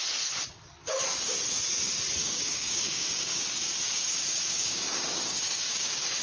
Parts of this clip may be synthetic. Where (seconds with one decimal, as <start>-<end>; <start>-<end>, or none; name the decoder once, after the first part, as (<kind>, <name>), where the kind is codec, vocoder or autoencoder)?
2.2-6.2 (codec, DAC)